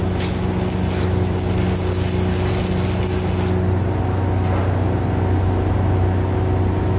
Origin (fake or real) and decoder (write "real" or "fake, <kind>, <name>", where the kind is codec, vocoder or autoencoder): real